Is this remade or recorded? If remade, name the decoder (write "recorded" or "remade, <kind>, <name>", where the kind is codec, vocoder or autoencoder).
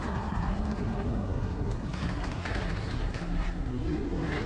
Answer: remade, codec, SNAC